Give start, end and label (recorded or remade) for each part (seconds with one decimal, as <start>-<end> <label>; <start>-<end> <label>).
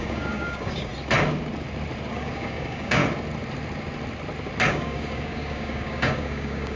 0.0-0.9 remade; 0.9-2.1 recorded; 2.1-3.0 remade; 3.0-4.7 recorded; 4.7-6.8 remade